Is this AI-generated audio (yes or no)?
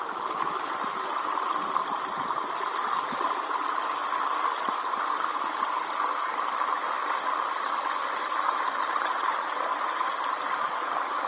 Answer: no